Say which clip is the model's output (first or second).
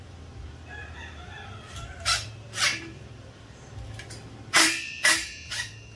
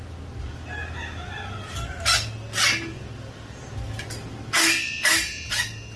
first